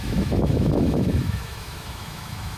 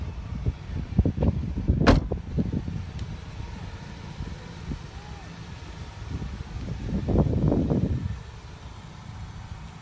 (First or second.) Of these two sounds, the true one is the second